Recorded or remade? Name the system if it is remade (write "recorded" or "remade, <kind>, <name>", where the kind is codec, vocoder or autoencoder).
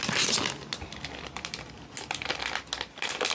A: recorded